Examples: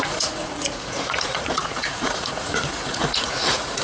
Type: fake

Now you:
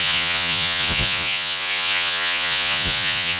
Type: fake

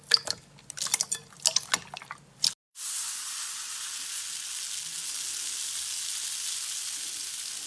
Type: real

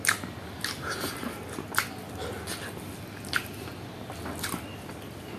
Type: real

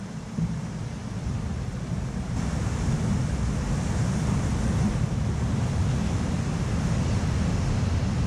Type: real